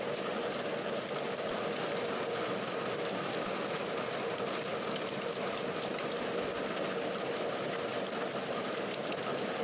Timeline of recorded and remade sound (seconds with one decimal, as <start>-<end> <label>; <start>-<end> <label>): 0.0-9.6 recorded